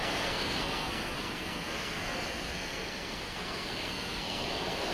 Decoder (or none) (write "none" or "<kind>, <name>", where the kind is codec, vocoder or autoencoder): codec, SNAC